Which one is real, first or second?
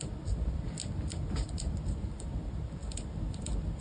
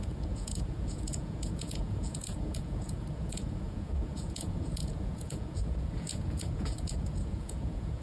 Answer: first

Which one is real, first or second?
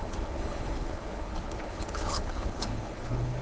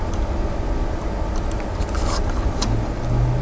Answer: second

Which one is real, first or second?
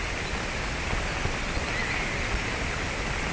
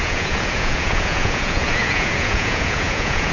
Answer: first